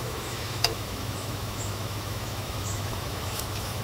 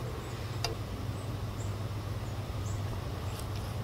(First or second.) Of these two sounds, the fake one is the first